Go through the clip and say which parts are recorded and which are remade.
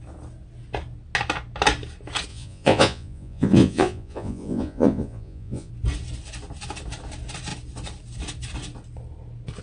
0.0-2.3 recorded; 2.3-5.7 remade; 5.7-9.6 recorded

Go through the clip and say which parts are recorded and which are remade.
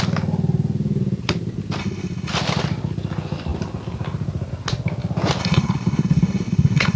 0.0-1.8 recorded; 1.8-2.3 remade; 2.3-5.4 recorded; 5.4-7.0 remade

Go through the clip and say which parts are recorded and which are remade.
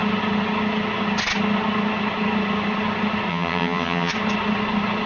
0.0-3.3 recorded; 3.3-4.1 remade; 4.1-5.1 recorded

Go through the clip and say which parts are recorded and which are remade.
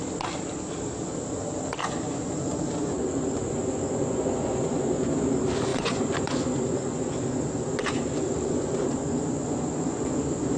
0.0-1.8 recorded; 1.8-5.2 remade; 5.2-5.7 recorded; 5.7-10.6 remade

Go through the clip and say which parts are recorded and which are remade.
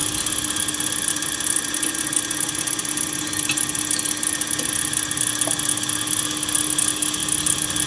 0.0-7.9 recorded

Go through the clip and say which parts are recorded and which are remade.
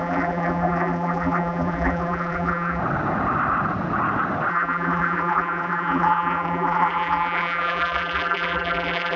0.0-2.8 remade; 2.8-4.5 recorded; 4.5-9.2 remade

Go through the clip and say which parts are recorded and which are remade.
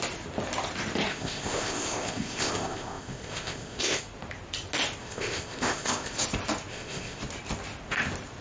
0.0-1.1 recorded; 1.1-4.0 remade; 4.0-5.0 recorded; 5.0-6.2 remade; 6.2-6.7 recorded; 6.7-7.2 remade; 7.2-8.4 recorded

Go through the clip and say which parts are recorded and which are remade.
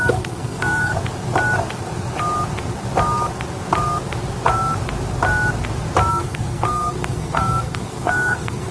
0.0-0.9 remade; 0.9-6.1 recorded; 6.1-8.7 remade